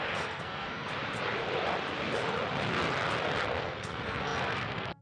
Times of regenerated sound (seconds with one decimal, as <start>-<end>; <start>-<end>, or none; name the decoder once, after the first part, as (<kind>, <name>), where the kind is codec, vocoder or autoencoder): 0.0-0.9 (codec, SNAC); 3.6-5.0